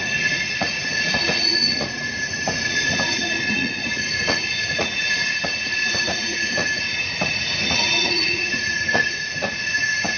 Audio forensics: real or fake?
fake